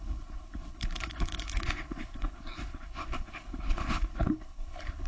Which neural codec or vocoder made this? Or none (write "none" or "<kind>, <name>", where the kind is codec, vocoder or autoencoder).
codec, HILCodec